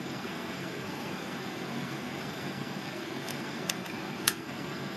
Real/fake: fake